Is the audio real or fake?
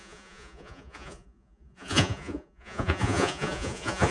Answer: fake